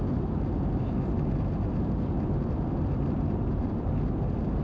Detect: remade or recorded recorded